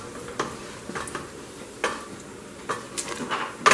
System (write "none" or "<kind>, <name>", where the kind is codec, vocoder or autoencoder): none